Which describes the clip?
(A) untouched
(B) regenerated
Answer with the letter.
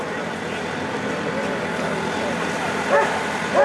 A